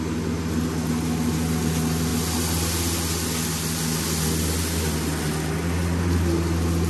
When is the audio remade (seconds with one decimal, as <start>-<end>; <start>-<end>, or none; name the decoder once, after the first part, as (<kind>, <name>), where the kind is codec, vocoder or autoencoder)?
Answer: none